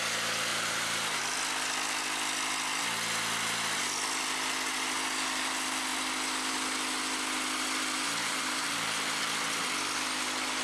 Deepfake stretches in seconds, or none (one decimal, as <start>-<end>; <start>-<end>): 0.5-1.2; 8.2-9.2